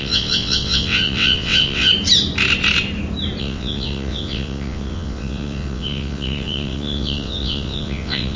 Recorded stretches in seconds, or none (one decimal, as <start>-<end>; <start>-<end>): 1.9-3.4